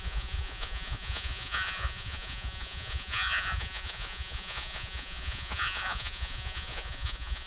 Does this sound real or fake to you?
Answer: fake